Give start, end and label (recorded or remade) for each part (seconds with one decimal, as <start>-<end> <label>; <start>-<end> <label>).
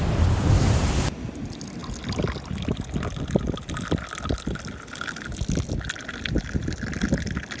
0.0-7.6 recorded